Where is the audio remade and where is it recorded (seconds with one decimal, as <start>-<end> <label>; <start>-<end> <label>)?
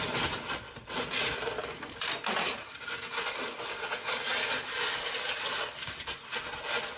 0.0-7.0 recorded